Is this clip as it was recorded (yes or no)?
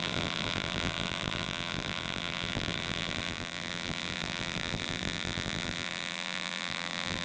no